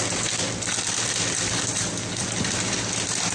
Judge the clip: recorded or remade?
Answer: remade